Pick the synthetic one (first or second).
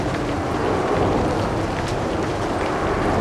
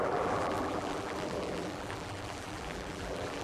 second